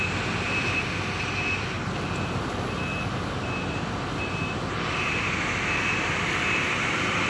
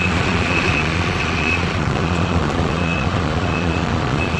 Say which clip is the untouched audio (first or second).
first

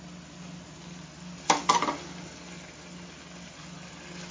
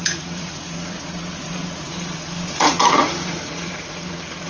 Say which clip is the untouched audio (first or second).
first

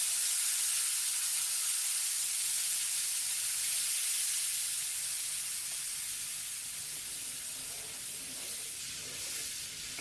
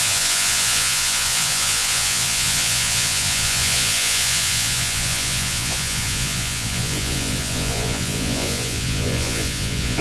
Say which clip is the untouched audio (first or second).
first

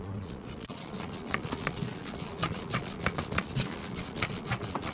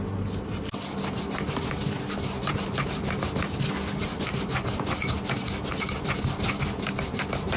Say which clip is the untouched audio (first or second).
second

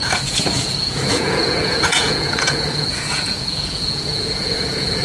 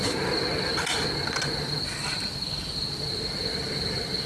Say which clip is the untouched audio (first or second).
second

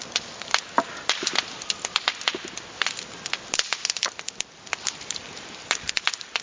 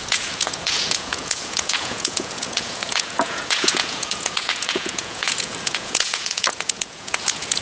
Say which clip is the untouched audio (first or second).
first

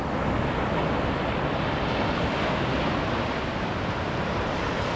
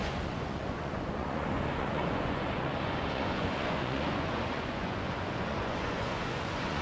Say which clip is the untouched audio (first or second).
first